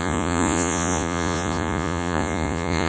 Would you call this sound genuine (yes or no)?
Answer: no